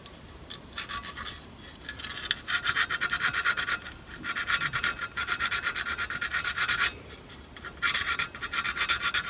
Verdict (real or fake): real